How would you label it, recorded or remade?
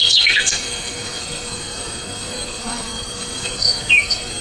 remade